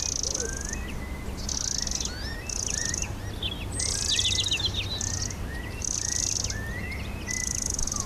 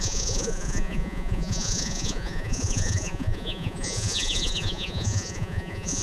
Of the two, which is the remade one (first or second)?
second